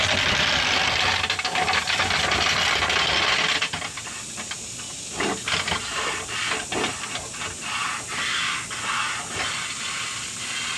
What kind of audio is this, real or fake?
real